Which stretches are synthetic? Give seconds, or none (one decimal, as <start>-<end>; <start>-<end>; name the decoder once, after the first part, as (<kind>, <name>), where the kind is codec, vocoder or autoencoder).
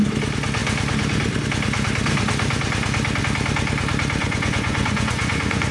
4.2-5.7 (vocoder, Vocos)